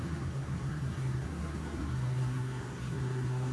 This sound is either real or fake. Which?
fake